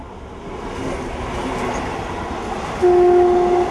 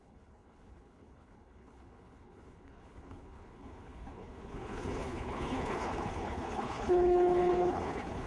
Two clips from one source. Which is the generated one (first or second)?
second